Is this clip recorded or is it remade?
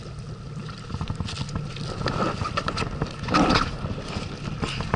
recorded